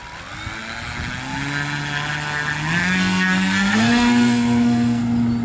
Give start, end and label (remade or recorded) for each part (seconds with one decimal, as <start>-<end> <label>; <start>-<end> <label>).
0.0-2.8 recorded; 2.8-5.0 remade; 5.0-5.4 recorded